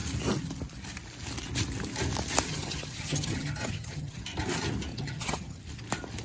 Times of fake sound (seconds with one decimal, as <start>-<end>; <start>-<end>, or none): 2.5-4.2; 4.9-5.6